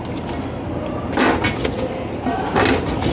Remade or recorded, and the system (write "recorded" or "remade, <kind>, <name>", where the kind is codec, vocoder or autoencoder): recorded